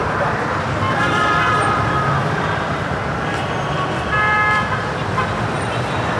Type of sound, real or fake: fake